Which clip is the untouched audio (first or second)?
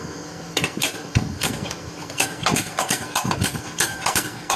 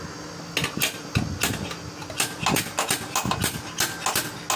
second